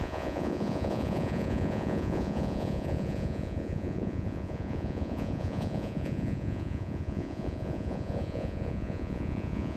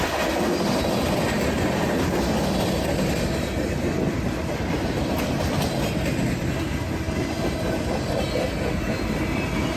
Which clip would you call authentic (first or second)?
second